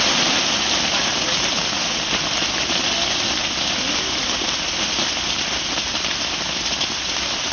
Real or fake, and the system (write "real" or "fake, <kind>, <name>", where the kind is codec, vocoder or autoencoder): real